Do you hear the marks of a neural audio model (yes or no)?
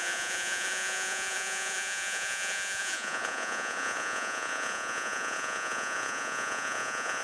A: yes